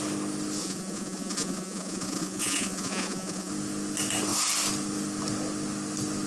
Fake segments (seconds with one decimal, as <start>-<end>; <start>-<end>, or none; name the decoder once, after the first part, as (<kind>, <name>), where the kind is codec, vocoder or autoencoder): 0.6-3.5 (vocoder, Vocos)